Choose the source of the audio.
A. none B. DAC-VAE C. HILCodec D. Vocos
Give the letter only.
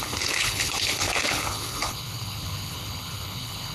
C